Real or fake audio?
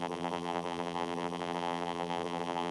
fake